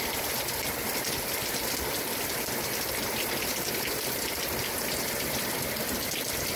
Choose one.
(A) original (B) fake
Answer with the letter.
A